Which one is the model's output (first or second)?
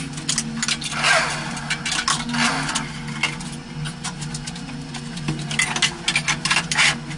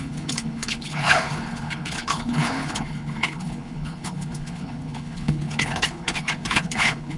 second